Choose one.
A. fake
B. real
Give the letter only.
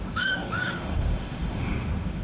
A